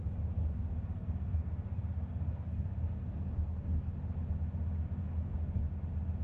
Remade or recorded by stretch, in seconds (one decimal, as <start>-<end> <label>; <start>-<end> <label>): 0.0-0.4 recorded; 0.4-3.9 remade; 3.9-5.0 recorded; 5.0-5.6 remade; 5.6-6.2 recorded